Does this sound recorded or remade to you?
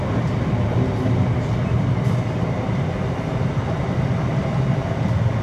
recorded